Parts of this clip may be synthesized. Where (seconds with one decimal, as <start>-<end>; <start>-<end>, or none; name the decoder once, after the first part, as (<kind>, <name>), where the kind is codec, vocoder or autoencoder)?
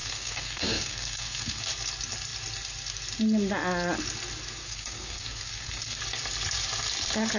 0.0-1.6 (codec, SNAC); 4.6-6.0